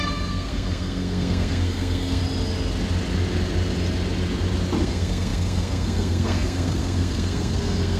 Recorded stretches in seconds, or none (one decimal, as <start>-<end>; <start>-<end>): 2.2-4.8

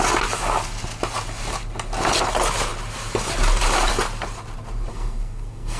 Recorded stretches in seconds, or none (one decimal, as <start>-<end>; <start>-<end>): 0.0-4.9

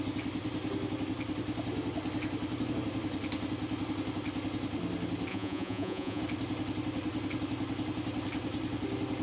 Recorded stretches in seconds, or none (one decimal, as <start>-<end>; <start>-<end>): 0.0-5.3; 6.2-9.2

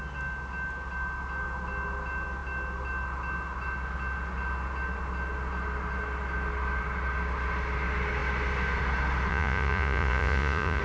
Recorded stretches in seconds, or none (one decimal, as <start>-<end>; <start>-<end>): 0.0-9.3

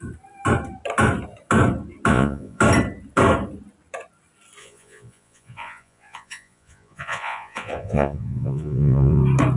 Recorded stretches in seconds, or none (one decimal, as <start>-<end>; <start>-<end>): 0.0-2.1; 2.6-4.6; 9.2-9.6